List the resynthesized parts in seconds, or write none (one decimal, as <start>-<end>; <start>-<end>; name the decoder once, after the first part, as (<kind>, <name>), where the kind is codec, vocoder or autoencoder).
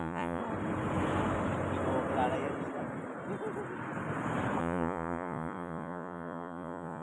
0.0-0.4 (vocoder, Vocos); 4.6-7.0